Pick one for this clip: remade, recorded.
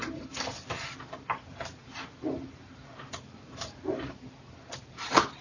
recorded